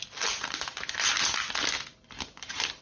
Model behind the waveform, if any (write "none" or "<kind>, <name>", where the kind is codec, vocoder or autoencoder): none